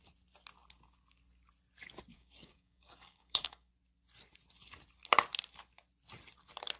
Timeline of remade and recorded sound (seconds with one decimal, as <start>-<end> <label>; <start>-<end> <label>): 0.0-2.1 recorded; 2.1-3.7 remade; 3.7-6.8 recorded